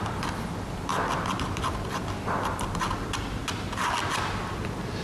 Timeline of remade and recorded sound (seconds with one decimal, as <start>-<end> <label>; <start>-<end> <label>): 0.0-0.9 remade; 0.9-2.0 recorded; 2.0-3.4 remade; 3.4-4.2 recorded; 4.2-5.0 remade